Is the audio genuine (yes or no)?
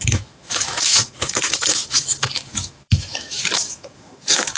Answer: no